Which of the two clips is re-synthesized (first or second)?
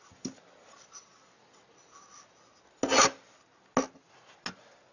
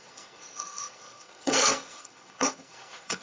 second